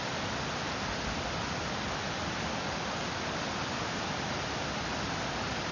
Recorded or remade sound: recorded